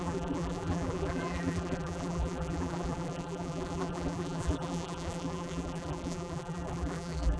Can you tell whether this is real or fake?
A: fake